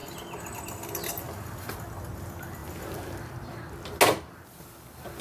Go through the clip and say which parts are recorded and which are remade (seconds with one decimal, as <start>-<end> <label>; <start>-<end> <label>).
0.0-5.2 recorded